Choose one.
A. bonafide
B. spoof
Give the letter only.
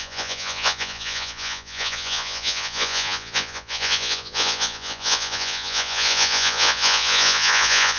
B